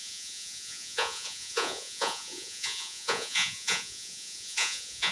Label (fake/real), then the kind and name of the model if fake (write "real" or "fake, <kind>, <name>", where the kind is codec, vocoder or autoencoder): fake, vocoder, Vocos